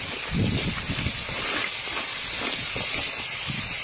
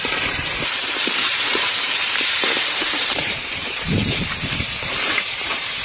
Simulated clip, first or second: second